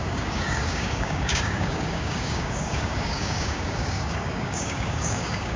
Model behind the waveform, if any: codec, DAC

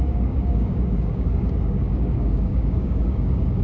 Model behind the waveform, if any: codec, DAC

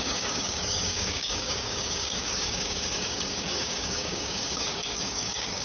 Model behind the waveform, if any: codec, DAC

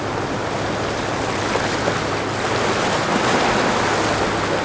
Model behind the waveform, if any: none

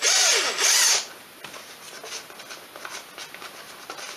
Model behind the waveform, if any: none